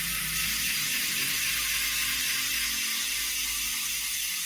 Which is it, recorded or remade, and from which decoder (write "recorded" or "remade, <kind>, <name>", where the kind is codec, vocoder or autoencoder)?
recorded